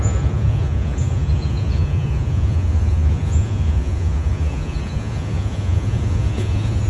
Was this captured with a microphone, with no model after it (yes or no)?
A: no